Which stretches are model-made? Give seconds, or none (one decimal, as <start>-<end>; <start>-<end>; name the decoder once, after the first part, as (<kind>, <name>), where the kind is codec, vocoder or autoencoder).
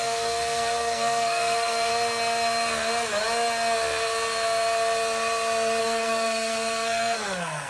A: 0.0-1.9 (codec, SNAC); 5.8-7.7